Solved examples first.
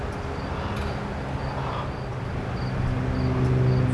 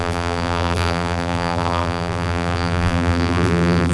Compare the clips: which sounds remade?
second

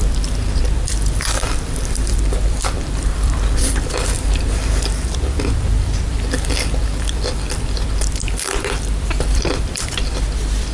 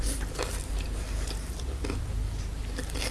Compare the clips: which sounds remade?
first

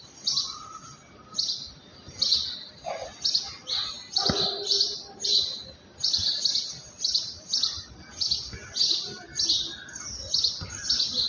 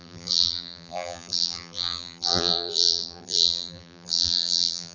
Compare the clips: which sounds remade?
second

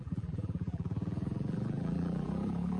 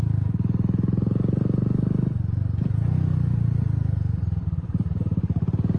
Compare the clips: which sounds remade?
first